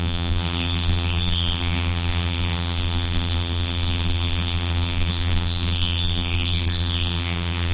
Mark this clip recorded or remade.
remade